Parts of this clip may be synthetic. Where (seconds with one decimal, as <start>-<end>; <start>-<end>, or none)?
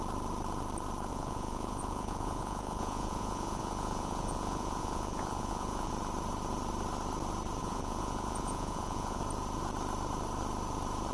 1.1-5.9; 7.6-9.2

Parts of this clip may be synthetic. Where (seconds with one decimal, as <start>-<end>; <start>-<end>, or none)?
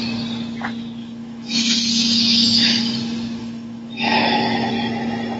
1.0-2.8; 3.4-4.7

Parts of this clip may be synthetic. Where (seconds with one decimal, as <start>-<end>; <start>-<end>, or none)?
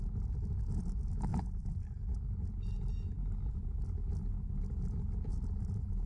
1.3-2.0; 5.3-6.1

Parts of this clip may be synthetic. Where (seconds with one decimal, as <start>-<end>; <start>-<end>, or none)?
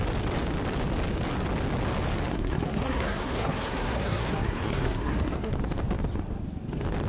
2.3-5.5